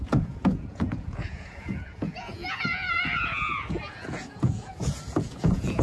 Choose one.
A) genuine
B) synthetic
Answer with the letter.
B